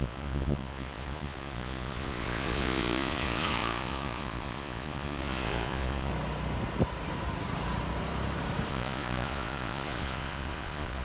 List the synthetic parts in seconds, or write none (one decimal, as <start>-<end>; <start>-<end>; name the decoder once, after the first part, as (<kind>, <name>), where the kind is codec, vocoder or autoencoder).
0.0-6.1 (vocoder, Vocos); 8.7-11.0